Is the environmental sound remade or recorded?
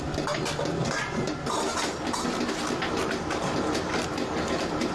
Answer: recorded